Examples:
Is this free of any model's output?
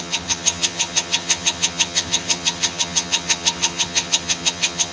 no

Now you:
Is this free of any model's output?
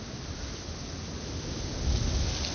yes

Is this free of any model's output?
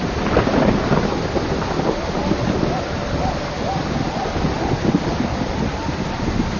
yes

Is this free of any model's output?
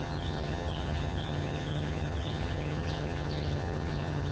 no